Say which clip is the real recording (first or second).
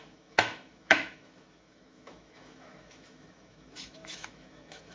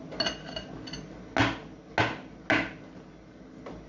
second